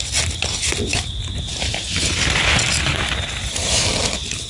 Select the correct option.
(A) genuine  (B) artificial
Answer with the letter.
A